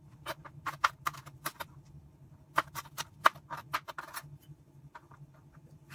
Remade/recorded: remade